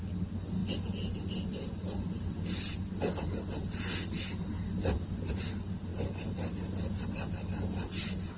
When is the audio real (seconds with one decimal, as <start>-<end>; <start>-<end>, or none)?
0.0-8.4